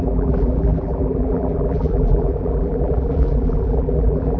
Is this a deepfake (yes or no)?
yes